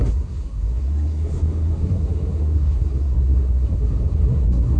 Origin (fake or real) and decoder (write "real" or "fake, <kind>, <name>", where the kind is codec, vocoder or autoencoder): fake, codec, SNAC